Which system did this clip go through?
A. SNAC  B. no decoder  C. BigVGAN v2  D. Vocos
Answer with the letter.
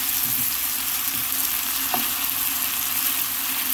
B